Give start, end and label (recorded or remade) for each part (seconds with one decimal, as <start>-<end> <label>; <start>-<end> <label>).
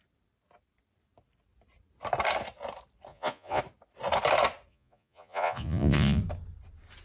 0.0-3.1 recorded; 3.1-3.6 remade; 3.6-4.7 recorded; 4.7-6.2 remade; 6.2-7.0 recorded